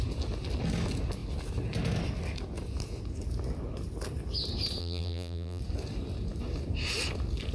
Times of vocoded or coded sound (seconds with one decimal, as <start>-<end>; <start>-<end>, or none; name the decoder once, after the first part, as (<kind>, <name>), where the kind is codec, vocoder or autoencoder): 4.8-5.6 (vocoder, BigVGAN v2)